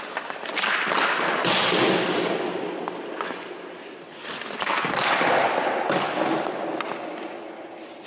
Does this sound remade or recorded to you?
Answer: recorded